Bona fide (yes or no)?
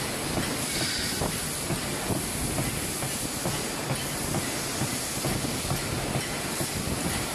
yes